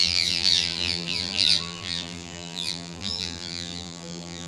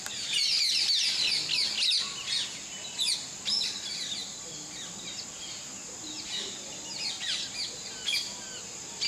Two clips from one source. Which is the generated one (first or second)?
first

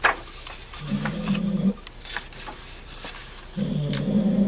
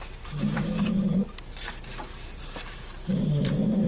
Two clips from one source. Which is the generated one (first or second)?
second